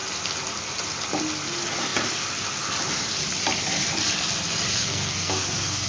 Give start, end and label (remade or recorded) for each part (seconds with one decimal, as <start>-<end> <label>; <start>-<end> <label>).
0.0-4.7 recorded; 4.7-5.9 remade